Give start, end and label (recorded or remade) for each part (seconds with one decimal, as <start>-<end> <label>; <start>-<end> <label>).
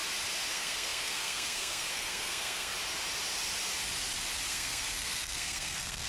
0.0-0.5 recorded; 0.5-2.7 remade; 2.7-4.5 recorded; 4.5-6.1 remade